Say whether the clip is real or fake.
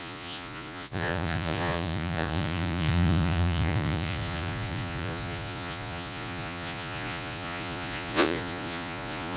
fake